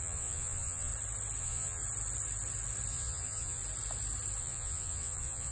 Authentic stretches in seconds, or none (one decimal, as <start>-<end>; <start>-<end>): 0.9-1.4; 1.8-2.9; 3.6-4.4